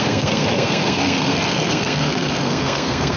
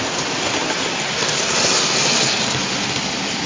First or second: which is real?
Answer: second